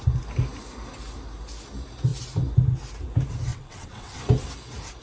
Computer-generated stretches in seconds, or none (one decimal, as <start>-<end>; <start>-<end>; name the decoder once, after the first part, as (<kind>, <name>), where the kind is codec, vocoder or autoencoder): 3.5-4.2 (vocoder, WaveNeXt)